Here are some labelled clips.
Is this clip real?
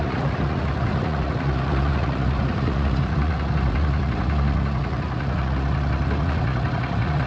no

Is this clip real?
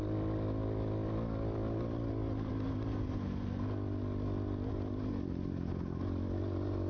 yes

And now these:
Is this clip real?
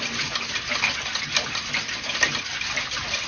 yes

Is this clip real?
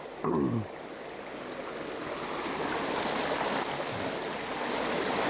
yes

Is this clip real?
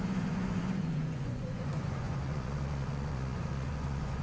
no